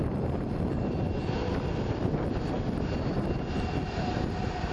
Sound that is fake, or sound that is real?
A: real